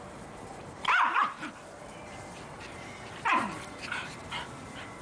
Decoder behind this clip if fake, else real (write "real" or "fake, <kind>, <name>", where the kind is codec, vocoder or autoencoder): fake, vocoder, BigVGAN v2